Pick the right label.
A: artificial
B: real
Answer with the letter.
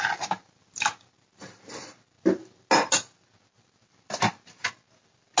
B